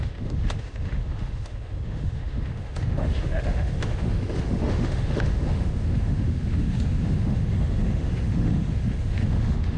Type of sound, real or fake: fake